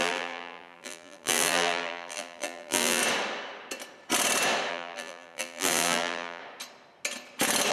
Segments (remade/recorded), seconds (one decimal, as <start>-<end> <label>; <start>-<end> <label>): 0.0-3.0 remade; 3.0-4.7 recorded; 4.7-6.4 remade; 6.4-7.7 recorded